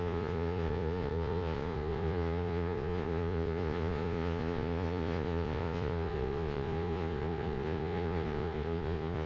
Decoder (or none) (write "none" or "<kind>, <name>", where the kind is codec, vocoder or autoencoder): vocoder, Vocos